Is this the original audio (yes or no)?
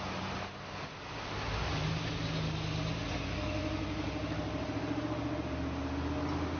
yes